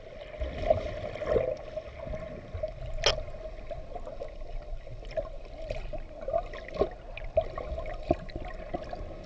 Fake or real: real